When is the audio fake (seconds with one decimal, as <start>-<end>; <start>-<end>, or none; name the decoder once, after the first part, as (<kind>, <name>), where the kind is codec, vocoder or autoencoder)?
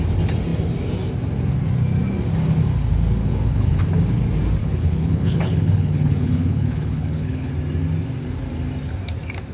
3.2-3.8 (codec, HILCodec); 4.6-7.5